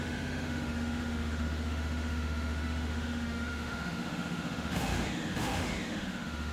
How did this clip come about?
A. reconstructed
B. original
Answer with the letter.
A